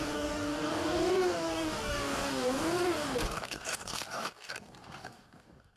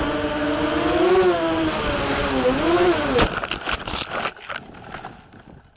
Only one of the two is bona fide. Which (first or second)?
second